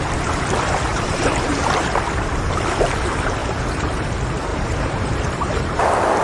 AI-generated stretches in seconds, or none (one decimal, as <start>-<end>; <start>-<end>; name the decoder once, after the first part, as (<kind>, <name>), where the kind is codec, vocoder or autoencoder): 0.9-1.6 (vocoder, BigVGAN v2); 3.4-4.1; 4.5-5.8